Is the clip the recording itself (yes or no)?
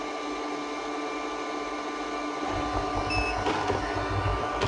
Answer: yes